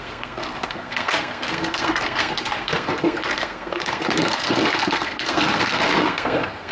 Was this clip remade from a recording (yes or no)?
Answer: yes